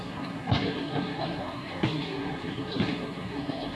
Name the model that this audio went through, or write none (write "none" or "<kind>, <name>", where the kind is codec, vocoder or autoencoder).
codec, SNAC